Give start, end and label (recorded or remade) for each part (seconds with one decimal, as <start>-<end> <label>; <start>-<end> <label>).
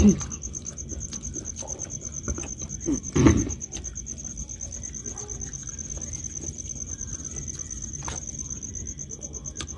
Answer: 0.0-9.8 recorded